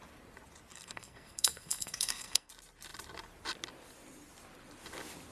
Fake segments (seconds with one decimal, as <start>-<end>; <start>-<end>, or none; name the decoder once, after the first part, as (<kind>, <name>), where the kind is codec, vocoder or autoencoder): 0.7-2.5 (codec, SNAC)